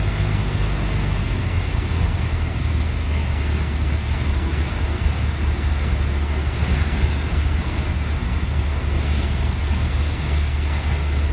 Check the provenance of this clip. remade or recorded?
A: remade